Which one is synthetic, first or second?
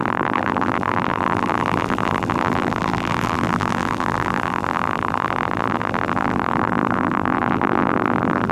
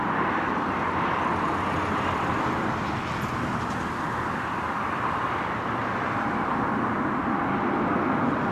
first